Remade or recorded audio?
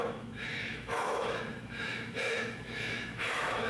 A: remade